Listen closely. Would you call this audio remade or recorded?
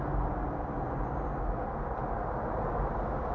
recorded